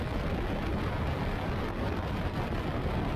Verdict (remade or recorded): recorded